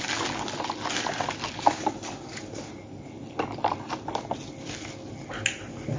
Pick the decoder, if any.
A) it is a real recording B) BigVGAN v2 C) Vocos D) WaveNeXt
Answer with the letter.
A